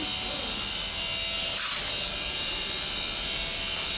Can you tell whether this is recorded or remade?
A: recorded